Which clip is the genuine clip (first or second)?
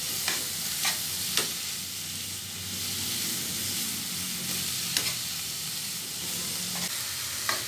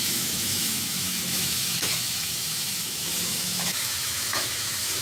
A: first